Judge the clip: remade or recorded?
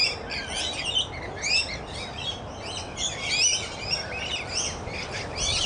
recorded